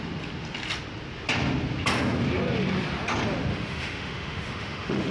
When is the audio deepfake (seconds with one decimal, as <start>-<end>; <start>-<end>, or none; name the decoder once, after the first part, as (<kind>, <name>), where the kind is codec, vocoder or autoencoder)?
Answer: 3.5-5.1 (autoencoder, DAC-VAE)